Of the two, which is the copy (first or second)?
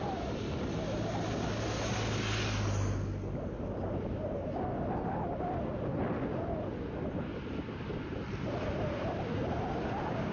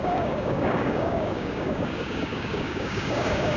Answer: second